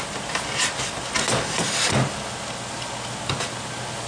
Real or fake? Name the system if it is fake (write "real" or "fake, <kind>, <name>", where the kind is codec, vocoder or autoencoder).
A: real